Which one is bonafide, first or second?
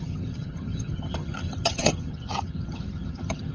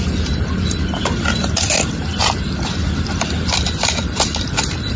second